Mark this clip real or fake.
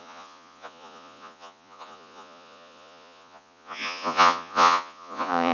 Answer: fake